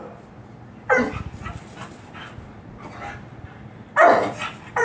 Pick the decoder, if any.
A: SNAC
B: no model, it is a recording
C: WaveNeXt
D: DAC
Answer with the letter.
B